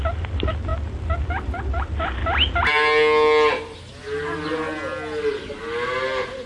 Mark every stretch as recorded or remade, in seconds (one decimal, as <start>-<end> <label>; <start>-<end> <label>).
0.0-6.5 recorded